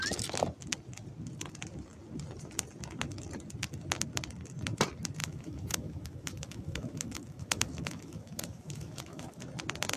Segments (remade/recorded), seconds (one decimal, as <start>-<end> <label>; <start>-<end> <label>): 0.0-5.2 recorded; 5.2-9.4 remade; 9.4-10.0 recorded